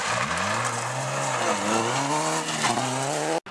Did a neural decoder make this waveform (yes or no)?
no